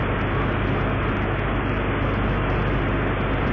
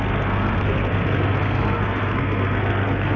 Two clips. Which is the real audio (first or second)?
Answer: first